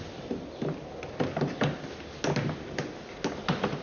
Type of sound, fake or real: real